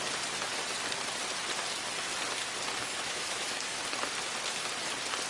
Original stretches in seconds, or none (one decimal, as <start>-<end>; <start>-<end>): 0.0-2.8; 3.8-5.3